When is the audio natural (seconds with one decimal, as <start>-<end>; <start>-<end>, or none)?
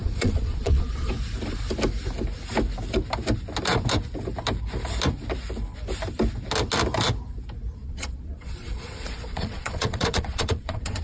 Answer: 1.1-7.8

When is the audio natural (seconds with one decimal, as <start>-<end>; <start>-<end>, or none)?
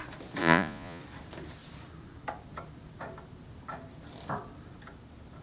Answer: 0.0-0.4; 1.0-5.4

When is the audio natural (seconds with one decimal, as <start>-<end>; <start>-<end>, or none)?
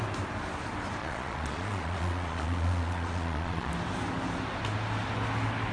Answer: 0.0-1.0; 3.7-5.7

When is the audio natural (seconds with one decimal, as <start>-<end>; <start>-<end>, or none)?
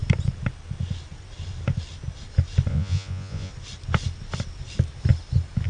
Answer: 0.0-2.7; 3.5-5.7